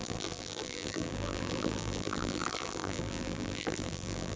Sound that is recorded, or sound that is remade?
remade